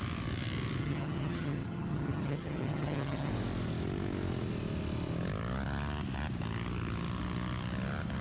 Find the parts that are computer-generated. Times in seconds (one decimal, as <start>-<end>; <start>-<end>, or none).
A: 0.8-3.3